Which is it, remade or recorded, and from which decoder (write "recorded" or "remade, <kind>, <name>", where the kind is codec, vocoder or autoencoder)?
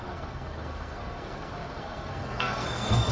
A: remade, codec, SNAC